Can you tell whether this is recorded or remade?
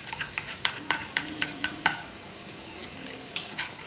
remade